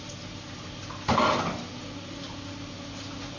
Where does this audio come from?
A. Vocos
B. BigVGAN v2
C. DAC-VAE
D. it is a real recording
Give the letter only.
D